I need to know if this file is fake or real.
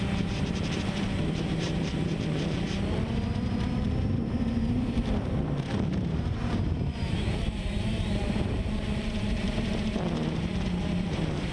fake